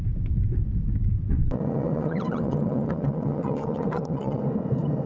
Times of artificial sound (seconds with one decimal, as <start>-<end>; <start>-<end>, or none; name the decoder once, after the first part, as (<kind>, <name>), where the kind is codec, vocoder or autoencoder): 1.3-4.4 (vocoder, WaveNeXt)